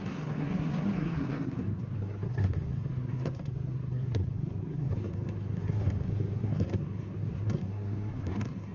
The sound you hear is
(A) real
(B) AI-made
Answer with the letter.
B